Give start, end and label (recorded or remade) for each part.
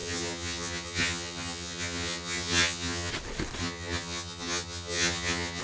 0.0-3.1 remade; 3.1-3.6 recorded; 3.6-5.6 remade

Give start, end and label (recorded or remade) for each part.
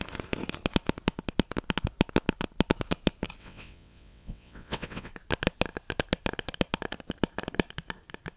0.0-3.4 recorded; 3.4-5.1 remade; 5.1-8.4 recorded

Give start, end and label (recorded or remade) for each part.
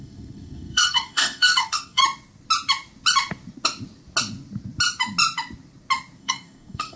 0.0-2.0 remade; 2.0-6.2 recorded; 6.2-7.0 remade